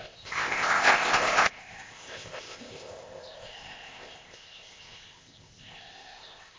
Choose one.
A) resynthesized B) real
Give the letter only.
A